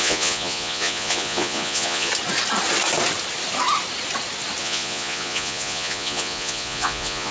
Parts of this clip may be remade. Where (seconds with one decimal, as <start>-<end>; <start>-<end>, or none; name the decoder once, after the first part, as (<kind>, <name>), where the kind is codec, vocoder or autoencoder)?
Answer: 0.0-2.1 (vocoder, Vocos); 4.6-7.3